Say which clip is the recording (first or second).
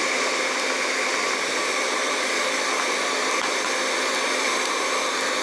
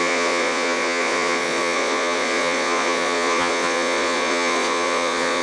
first